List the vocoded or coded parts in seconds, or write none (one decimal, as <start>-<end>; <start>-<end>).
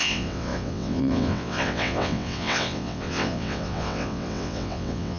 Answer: 0.0-5.2